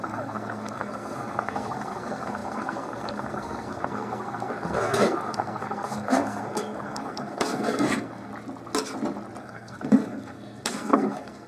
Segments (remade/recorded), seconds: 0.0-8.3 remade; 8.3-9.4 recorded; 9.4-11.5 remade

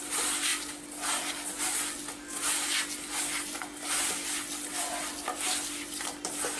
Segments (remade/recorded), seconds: 0.0-6.6 recorded

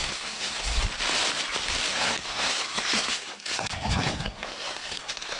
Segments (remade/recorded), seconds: 0.0-0.8 remade; 0.8-1.9 recorded; 1.9-5.4 remade

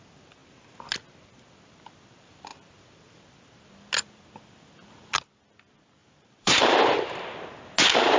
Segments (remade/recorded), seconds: 0.0-6.0 recorded; 6.0-6.6 remade; 6.6-8.2 recorded

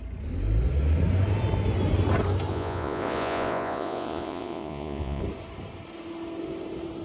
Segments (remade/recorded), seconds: 0.0-2.5 recorded; 2.5-5.2 remade; 5.2-7.0 recorded